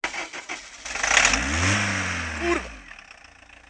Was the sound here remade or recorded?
recorded